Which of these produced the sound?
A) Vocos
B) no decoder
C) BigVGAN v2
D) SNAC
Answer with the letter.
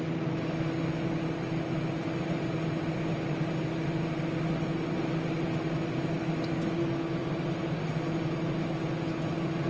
B